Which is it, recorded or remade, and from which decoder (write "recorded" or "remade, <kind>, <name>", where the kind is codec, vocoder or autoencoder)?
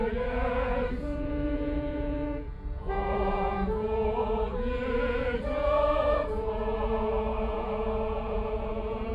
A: remade, vocoder, Vocos